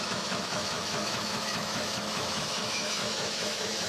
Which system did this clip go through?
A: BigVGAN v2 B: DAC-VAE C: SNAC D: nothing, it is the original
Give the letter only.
B